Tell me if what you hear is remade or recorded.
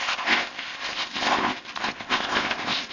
remade